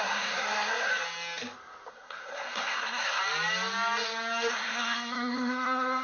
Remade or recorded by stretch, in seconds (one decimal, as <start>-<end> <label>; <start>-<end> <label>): 0.0-0.9 remade; 0.9-1.9 recorded; 1.9-3.2 remade; 3.2-4.5 recorded; 4.5-6.0 remade